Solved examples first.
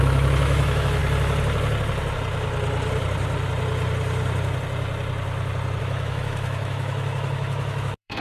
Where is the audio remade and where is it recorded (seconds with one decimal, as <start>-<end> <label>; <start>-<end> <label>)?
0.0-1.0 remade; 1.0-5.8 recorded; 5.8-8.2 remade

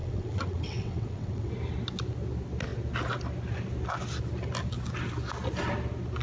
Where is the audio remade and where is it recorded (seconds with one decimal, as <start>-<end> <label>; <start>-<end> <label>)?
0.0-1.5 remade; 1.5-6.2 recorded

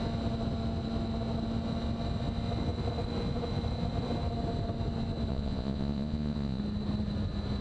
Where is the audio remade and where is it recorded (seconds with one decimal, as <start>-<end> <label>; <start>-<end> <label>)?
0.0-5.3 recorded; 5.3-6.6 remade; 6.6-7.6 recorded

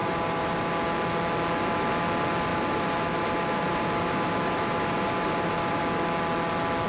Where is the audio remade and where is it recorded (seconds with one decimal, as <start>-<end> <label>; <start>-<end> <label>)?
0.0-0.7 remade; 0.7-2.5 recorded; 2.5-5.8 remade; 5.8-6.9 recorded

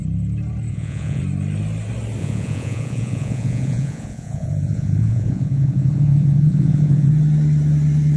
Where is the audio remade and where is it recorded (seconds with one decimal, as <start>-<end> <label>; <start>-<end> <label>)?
0.0-0.7 recorded; 0.7-1.2 remade; 1.2-2.2 recorded; 2.2-7.1 remade; 7.1-8.2 recorded

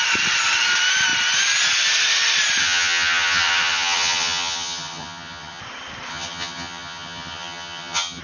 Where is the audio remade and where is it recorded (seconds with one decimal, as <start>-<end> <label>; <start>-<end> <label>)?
0.0-2.6 recorded; 2.6-5.6 remade; 5.6-6.1 recorded; 6.1-8.2 remade

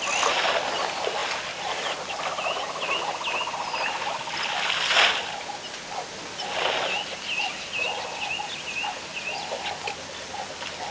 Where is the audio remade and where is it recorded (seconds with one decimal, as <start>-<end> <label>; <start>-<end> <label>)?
0.0-10.9 recorded